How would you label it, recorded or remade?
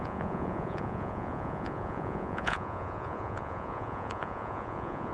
remade